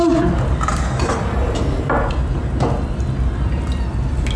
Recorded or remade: recorded